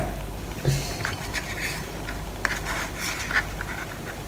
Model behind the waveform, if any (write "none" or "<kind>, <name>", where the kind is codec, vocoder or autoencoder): none